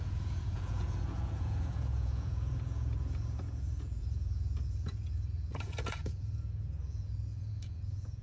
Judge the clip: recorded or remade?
remade